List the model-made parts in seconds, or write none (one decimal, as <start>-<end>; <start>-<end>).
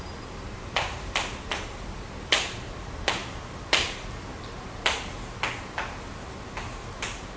0.0-3.2